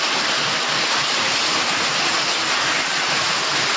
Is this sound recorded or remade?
recorded